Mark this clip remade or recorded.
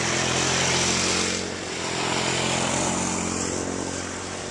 recorded